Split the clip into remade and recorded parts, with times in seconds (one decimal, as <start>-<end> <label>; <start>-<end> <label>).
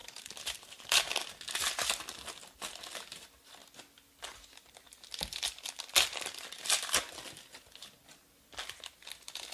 0.0-1.2 remade; 1.2-9.5 recorded